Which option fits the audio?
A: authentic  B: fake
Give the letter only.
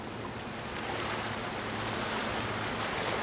A